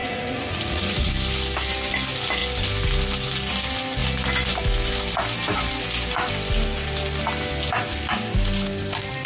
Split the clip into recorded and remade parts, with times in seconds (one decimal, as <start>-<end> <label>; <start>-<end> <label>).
0.0-1.1 remade; 1.1-9.3 recorded